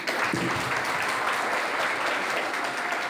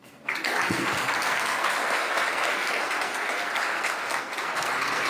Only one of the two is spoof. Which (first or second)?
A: second